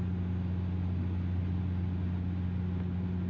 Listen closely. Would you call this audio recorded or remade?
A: recorded